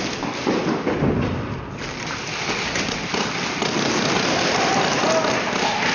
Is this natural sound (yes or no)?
no